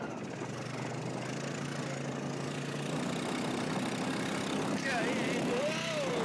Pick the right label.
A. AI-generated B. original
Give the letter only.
B